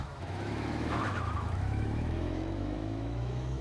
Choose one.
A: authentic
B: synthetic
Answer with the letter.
B